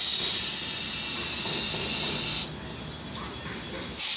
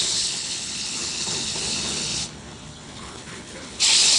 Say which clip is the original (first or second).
first